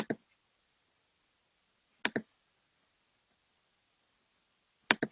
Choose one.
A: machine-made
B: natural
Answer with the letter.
B